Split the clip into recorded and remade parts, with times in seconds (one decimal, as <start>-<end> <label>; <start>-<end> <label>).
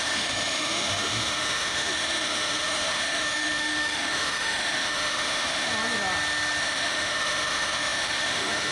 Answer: 0.0-5.7 remade; 5.7-6.6 recorded; 6.6-8.7 remade